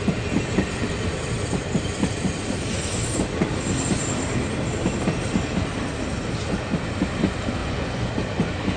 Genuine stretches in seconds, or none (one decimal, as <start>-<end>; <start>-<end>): 0.0-7.6; 8.1-8.8